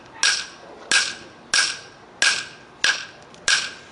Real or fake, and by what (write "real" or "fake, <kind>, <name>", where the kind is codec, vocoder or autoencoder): real